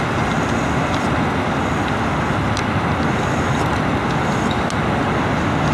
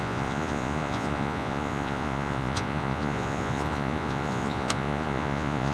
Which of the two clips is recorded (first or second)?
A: first